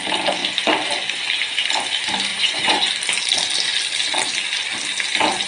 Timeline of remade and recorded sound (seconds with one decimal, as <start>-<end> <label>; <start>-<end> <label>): 0.0-2.3 recorded; 2.3-2.9 remade; 2.9-5.5 recorded